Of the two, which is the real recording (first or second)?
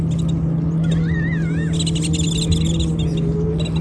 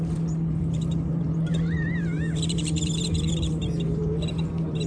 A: first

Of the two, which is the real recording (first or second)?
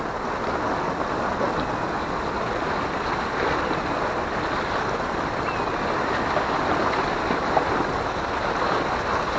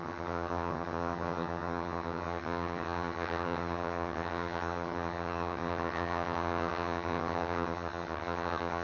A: first